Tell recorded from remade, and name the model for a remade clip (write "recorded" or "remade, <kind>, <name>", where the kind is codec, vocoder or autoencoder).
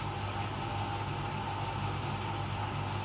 recorded